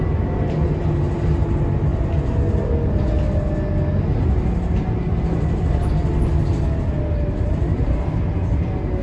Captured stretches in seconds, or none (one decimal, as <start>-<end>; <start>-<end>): 0.0-9.0